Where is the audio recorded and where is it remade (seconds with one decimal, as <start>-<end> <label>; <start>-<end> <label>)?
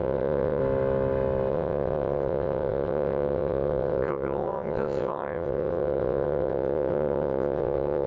0.0-0.6 remade; 0.6-1.5 recorded; 1.5-8.1 remade